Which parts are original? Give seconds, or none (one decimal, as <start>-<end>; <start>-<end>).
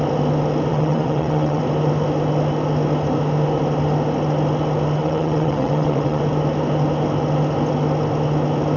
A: 0.0-0.7; 1.6-5.0; 6.2-8.8